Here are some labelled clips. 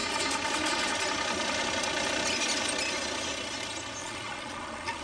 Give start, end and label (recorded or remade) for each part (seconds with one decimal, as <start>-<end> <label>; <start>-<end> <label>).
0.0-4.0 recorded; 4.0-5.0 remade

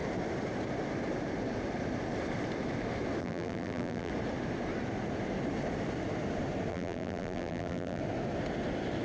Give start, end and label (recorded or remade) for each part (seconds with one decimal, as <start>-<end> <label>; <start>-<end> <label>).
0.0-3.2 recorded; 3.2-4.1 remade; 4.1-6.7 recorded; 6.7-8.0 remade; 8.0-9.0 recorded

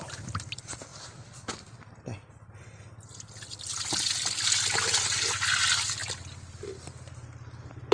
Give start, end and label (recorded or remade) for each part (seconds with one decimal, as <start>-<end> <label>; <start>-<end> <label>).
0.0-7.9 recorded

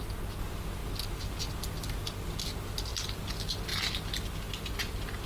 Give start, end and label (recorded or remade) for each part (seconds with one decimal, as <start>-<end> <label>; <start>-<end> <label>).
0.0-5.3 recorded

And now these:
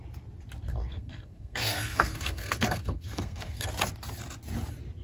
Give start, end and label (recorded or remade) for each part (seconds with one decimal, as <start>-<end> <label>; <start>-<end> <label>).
0.0-0.7 recorded; 0.7-3.7 remade; 3.7-5.0 recorded

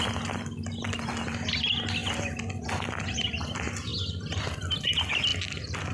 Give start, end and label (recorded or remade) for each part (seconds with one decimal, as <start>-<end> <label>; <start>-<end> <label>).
0.0-5.9 recorded

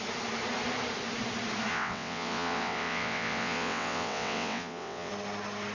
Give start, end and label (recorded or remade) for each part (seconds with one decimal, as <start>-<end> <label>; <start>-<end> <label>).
0.0-1.7 recorded; 1.7-5.1 remade; 5.1-5.7 recorded

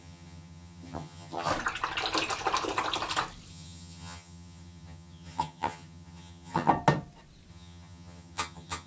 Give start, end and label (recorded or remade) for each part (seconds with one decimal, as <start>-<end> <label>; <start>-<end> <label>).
0.0-1.5 remade; 1.5-3.5 recorded; 3.5-6.7 remade; 6.7-7.5 recorded; 7.5-8.9 remade